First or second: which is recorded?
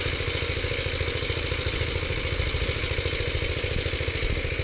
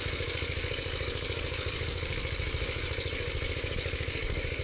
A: first